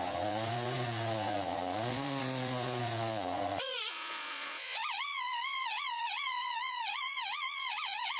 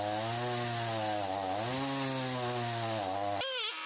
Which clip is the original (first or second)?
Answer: second